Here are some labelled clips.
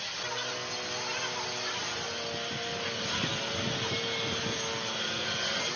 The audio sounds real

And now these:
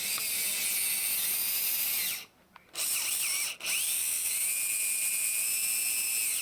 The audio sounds real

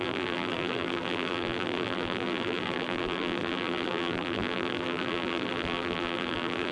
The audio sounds fake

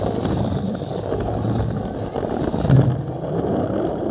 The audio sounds real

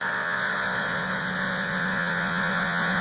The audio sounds fake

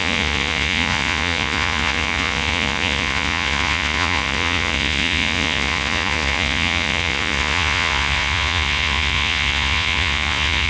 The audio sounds fake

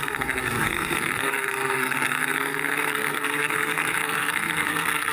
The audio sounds fake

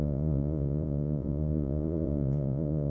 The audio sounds fake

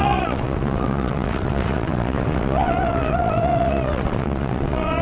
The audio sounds fake